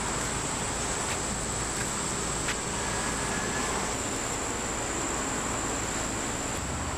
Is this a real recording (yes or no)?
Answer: yes